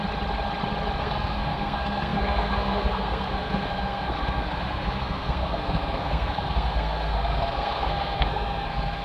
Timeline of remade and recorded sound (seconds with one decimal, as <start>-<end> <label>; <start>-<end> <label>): 0.0-1.0 recorded; 1.0-9.0 remade